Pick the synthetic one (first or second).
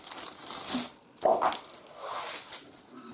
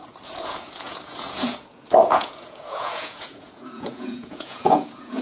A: second